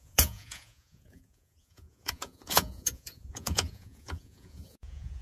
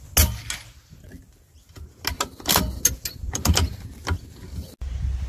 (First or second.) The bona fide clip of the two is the second